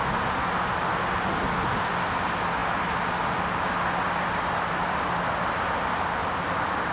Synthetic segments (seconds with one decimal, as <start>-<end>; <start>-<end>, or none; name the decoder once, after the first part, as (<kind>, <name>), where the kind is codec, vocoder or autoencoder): none